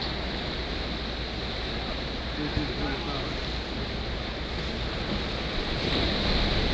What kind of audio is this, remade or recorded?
recorded